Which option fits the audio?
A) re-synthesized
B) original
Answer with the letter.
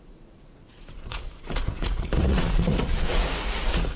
A